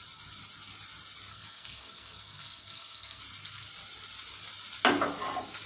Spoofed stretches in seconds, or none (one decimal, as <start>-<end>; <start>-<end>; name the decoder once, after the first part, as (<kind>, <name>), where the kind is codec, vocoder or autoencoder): 1.3-3.2 (codec, SNAC)